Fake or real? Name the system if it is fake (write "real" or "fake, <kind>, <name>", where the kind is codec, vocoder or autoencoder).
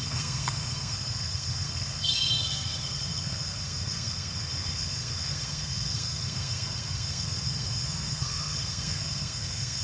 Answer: fake, codec, SNAC